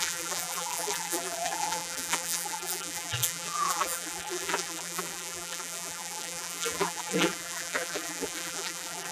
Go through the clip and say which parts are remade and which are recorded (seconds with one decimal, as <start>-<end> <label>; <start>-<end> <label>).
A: 0.0-9.1 remade